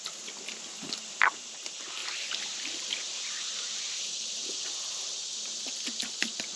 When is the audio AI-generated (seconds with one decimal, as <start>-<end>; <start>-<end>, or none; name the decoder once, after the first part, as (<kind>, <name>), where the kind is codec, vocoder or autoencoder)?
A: none